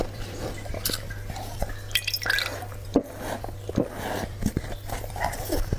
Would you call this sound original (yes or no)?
no